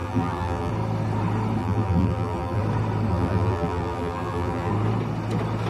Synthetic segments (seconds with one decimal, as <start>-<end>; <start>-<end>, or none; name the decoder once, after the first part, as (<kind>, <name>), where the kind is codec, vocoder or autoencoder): 0.0-0.7 (vocoder, BigVGAN v2); 1.6-2.6; 3.1-4.7